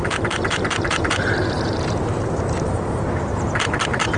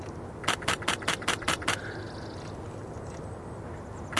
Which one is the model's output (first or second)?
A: first